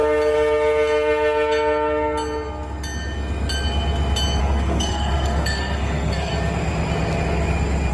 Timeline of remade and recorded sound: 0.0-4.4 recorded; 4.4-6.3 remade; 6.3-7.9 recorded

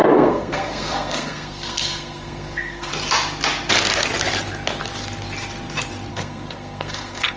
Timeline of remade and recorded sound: 0.0-2.9 remade; 2.9-6.1 recorded; 6.1-7.4 remade